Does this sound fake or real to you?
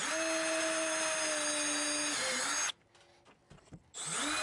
real